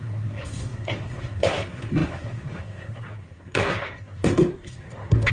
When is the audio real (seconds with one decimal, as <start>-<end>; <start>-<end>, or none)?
none